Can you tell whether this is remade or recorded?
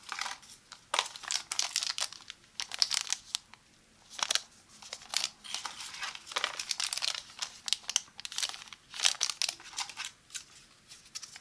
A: recorded